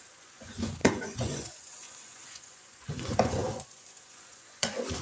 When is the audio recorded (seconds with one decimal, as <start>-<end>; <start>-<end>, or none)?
none